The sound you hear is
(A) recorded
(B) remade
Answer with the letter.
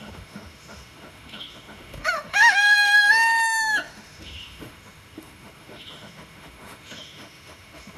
B